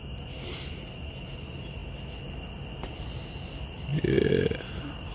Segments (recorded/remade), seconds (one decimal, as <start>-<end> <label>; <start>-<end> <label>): 0.0-5.1 recorded